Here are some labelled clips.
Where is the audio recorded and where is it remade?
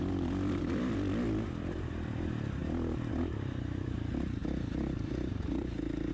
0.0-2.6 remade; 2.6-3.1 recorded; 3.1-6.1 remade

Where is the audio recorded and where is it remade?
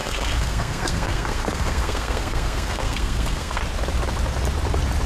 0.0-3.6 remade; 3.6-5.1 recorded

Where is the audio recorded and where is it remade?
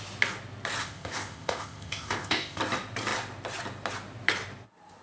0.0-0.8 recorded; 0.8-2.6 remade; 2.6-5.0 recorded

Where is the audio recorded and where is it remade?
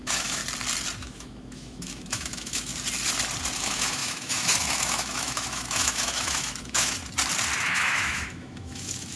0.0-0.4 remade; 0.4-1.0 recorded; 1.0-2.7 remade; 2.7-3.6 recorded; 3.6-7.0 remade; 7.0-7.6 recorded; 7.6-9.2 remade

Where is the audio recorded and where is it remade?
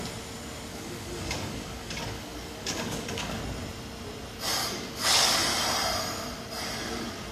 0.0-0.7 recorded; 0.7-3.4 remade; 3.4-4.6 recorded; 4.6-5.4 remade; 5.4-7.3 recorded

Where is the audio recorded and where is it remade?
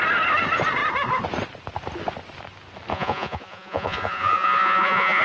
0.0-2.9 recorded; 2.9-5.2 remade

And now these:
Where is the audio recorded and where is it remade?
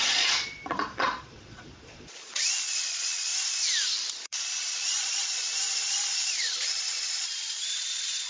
0.0-3.3 remade; 3.3-4.1 recorded; 4.1-8.3 remade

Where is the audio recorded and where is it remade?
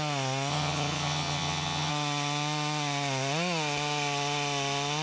0.0-0.5 recorded; 0.5-1.9 remade; 1.9-5.0 recorded